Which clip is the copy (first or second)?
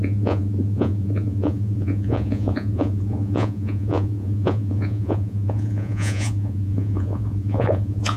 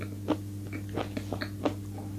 first